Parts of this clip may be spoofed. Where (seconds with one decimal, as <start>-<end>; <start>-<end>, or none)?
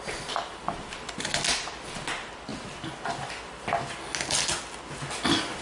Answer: none